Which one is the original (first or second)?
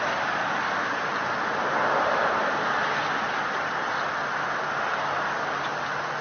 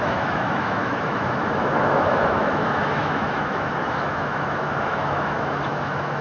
first